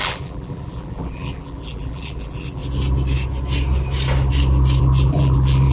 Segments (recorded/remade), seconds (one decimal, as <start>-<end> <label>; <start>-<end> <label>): 0.0-2.6 remade; 2.6-4.8 recorded; 4.8-5.7 remade